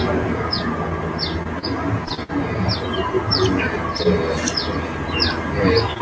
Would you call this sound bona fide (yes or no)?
yes